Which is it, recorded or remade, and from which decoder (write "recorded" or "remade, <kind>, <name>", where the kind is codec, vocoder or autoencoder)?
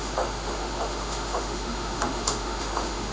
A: remade, autoencoder, DAC-VAE